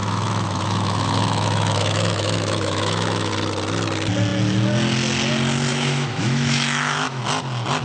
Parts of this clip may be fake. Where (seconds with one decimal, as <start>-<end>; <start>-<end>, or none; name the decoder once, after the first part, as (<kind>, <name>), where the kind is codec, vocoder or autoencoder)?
0.0-3.3 (autoencoder, DAC-VAE); 5.7-7.2